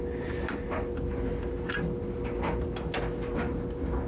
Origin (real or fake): real